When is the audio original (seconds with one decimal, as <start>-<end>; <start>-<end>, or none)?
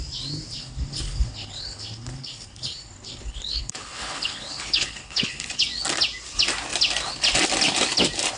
0.0-0.6; 5.6-8.4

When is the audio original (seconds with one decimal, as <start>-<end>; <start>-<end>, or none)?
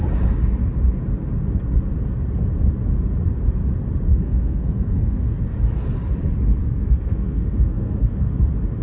0.0-4.1; 5.2-6.6; 8.3-8.8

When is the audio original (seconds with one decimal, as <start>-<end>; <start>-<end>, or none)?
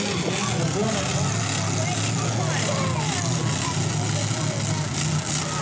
0.0-5.6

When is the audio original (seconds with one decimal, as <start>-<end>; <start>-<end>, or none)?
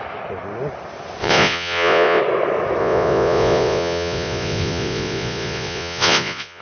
0.0-1.2; 2.2-2.8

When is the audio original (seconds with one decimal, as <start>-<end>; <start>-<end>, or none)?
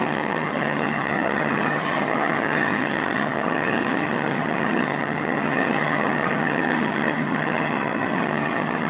none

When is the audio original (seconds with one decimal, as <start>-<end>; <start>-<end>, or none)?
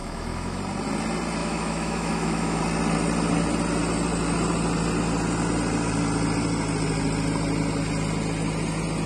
0.6-1.4; 2.6-9.1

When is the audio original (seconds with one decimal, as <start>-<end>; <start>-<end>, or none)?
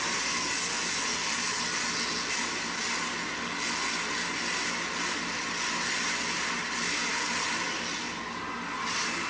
0.0-9.3